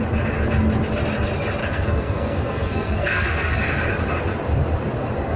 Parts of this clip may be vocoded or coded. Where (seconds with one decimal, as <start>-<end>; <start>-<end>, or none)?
1.6-3.6